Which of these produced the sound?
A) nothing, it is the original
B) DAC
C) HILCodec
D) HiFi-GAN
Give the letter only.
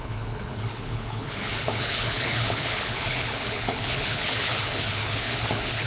C